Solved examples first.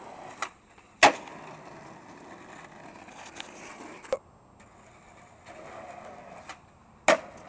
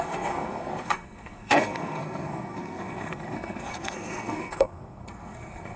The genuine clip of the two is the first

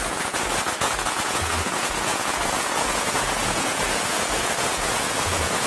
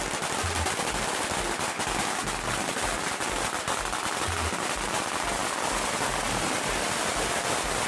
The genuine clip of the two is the second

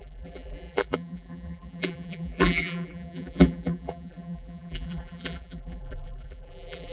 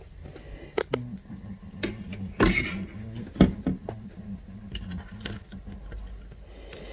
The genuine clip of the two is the second